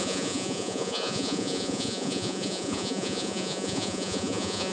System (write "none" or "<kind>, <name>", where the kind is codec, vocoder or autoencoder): vocoder, Vocos